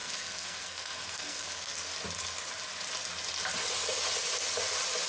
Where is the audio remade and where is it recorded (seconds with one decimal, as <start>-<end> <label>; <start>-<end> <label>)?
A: 0.0-1.9 remade; 1.9-5.1 recorded